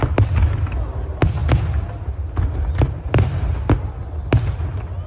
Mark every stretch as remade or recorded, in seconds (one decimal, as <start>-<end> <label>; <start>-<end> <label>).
0.0-5.1 recorded